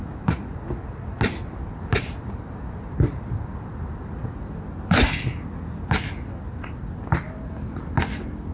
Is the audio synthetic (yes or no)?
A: no